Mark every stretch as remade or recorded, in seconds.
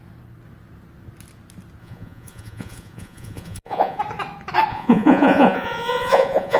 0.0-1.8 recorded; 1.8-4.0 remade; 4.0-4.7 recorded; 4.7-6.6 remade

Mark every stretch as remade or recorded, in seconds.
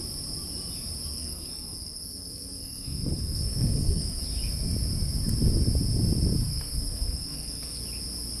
0.0-1.1 recorded; 1.1-4.2 remade; 4.2-6.5 recorded; 6.5-7.8 remade; 7.8-8.4 recorded